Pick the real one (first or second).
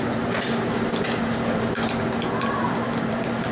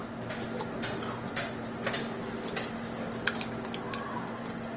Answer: second